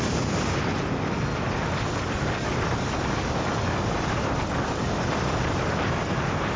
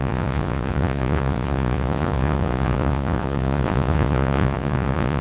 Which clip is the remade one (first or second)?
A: second